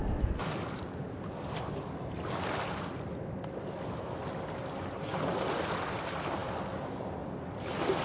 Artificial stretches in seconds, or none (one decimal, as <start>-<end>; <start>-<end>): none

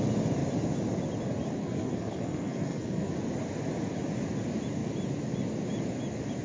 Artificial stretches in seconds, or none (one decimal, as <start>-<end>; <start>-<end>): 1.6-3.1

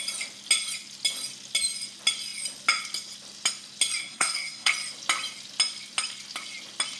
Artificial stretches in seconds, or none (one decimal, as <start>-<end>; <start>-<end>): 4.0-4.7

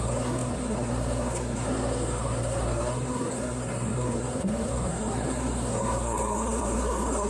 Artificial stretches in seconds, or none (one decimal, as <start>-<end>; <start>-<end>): 0.0-7.3

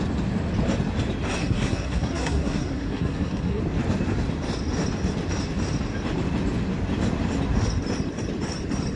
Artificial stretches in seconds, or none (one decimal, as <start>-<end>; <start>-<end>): 1.4-3.6

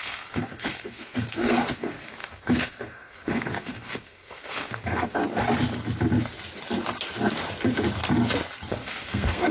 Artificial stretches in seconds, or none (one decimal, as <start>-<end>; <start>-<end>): 0.0-5.2; 8.7-9.5

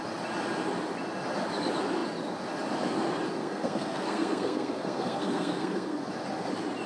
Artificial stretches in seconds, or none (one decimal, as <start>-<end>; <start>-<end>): 3.4-6.1

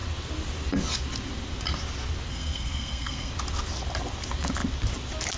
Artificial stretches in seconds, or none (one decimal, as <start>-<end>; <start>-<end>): 2.3-3.3